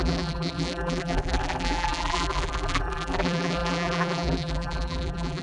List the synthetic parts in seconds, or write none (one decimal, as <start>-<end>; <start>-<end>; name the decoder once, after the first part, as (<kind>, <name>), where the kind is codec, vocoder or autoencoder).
0.0-5.4 (vocoder, BigVGAN v2)